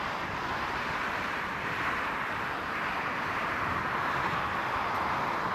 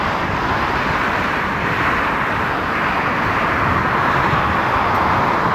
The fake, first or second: first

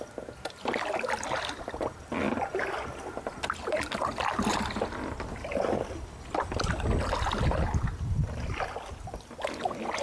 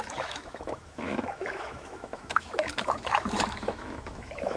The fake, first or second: second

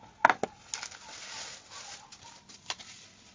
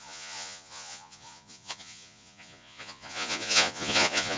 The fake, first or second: second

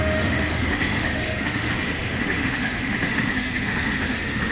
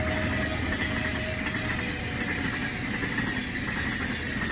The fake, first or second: first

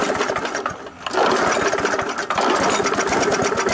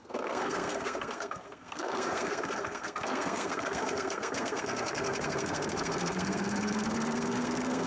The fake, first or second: second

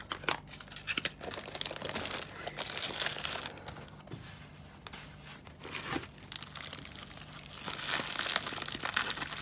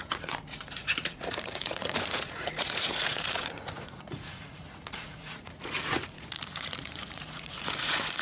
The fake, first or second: second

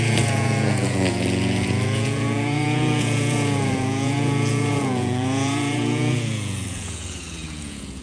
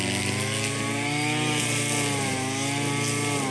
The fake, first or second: first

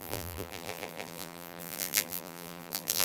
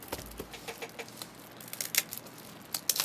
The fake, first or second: first